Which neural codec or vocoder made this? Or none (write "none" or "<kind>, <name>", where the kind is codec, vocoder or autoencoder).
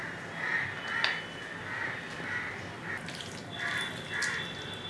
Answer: none